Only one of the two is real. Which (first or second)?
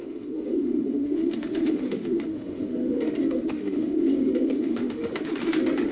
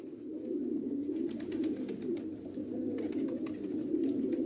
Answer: second